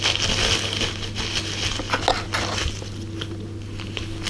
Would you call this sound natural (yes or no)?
yes